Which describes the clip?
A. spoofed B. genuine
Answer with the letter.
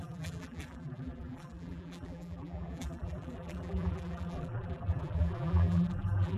A